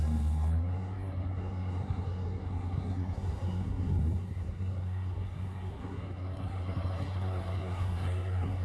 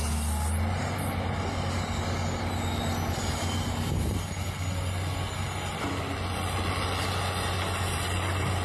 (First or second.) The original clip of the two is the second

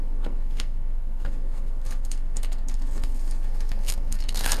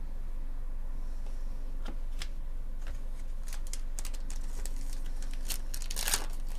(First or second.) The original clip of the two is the second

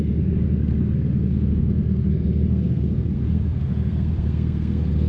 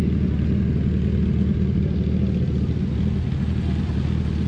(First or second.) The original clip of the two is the second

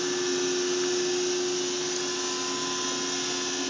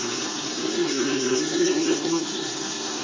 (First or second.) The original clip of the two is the first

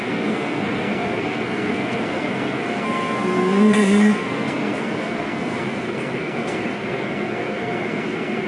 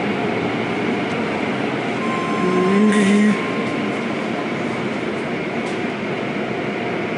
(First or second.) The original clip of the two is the second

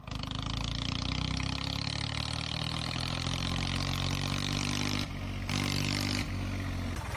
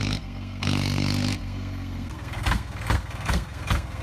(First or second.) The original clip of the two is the first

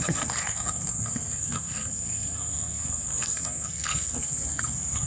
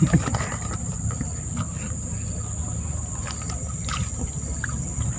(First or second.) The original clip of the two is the second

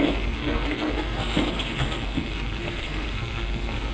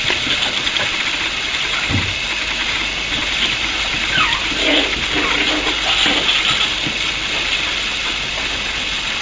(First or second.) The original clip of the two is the second